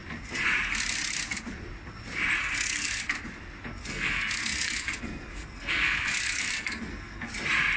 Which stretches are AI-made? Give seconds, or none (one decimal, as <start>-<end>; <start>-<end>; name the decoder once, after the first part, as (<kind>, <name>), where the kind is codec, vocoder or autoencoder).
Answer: 2.4-3.0 (codec, SNAC); 3.8-7.3